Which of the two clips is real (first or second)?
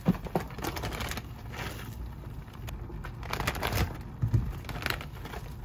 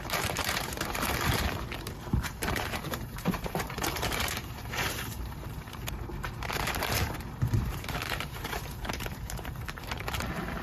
first